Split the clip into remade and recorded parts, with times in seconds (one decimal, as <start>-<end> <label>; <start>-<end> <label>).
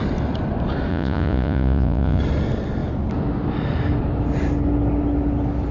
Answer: 0.0-0.9 recorded; 0.9-2.2 remade; 2.2-5.7 recorded